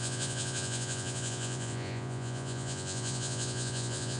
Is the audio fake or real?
fake